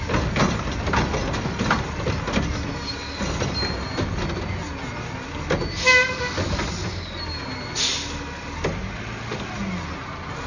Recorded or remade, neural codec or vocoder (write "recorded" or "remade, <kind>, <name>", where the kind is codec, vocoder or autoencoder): recorded